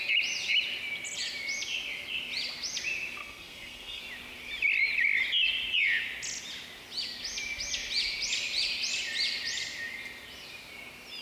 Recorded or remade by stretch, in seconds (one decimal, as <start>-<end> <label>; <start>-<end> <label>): 0.0-3.2 recorded; 3.2-4.0 remade; 4.0-11.2 recorded